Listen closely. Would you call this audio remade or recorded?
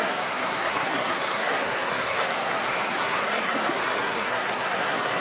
remade